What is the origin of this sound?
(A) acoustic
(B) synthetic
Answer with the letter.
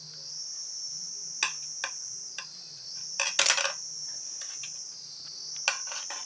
A